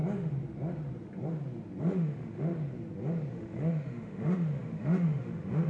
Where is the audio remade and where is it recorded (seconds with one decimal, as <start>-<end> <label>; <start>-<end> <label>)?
0.0-1.8 recorded; 1.8-2.5 remade; 2.5-3.3 recorded; 3.3-5.7 remade